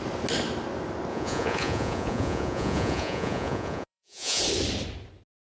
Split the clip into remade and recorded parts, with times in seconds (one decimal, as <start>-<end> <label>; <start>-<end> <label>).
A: 0.0-1.1 recorded; 1.1-4.4 remade; 4.4-5.5 recorded